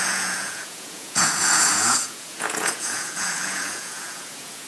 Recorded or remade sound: remade